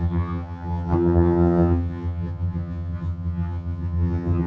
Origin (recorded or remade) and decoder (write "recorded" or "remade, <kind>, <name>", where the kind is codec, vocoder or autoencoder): remade, vocoder, HiFi-GAN